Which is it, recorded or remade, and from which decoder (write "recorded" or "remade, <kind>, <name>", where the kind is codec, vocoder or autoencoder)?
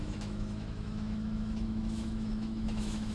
remade, autoencoder, DAC-VAE